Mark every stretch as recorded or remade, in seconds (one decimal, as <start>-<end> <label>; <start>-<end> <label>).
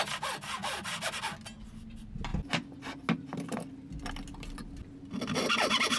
0.0-6.0 recorded